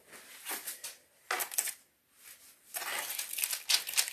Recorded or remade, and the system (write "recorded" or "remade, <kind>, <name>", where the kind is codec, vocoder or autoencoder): recorded